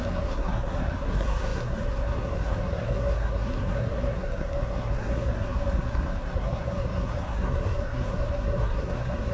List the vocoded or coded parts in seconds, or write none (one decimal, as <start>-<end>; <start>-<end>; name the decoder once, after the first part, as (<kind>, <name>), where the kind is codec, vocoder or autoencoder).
0.0-9.3 (codec, SNAC)